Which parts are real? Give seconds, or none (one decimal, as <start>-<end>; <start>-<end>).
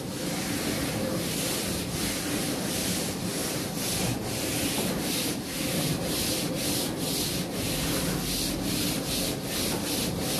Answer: 0.0-10.4